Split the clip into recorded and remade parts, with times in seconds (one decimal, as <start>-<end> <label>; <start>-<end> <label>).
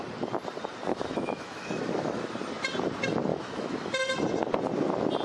0.0-0.9 recorded; 0.9-2.2 remade; 2.2-3.3 recorded; 3.3-3.9 remade; 3.9-5.2 recorded